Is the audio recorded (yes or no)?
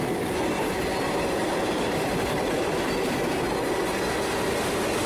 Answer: yes